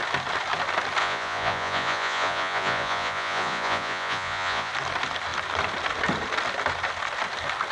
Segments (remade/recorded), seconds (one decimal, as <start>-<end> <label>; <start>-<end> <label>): 0.0-1.0 recorded; 1.0-4.7 remade; 4.7-7.7 recorded